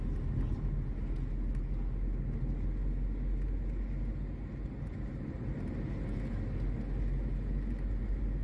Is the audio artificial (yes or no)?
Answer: no